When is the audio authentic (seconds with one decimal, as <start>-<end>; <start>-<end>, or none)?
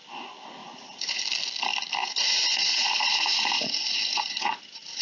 0.0-0.6; 1.2-2.0